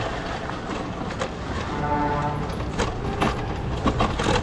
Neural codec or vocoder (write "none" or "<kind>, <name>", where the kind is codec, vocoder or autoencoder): none